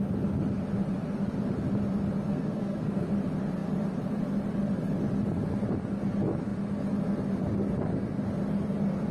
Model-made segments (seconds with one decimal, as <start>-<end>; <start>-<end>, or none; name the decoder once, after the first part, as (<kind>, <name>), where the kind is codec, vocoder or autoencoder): 2.3-3.1 (codec, SNAC)

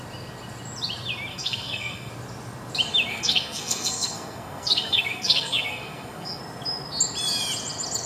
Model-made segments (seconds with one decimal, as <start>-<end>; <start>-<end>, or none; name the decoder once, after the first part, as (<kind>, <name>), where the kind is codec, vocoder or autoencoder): 1.3-2.1 (codec, SNAC); 3.1-6.4

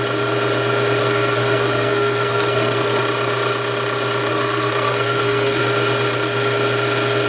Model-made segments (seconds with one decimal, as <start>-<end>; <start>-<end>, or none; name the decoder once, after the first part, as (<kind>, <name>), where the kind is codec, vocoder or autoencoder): 1.0-3.0 (codec, SNAC); 4.3-5.6

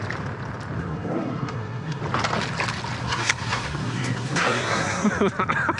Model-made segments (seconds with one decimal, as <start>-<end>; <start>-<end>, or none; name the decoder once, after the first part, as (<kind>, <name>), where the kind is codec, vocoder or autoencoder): 0.8-2.0 (codec, SNAC); 3.0-5.1